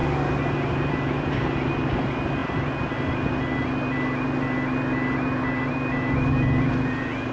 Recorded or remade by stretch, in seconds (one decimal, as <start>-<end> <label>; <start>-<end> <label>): 0.0-7.3 recorded